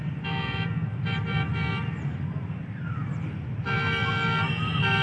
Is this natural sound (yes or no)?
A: yes